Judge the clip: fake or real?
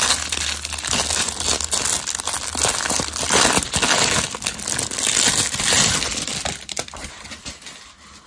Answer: real